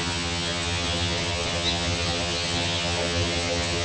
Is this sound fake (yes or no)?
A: yes